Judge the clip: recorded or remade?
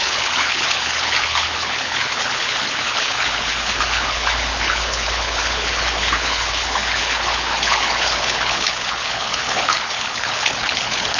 remade